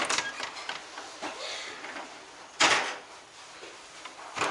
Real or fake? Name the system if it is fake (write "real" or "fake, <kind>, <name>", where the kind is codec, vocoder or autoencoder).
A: real